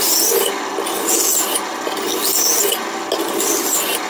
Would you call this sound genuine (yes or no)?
yes